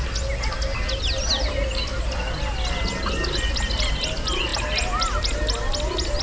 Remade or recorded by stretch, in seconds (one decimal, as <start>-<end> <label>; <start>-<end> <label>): 0.0-6.2 recorded